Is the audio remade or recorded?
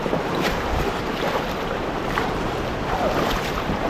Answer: remade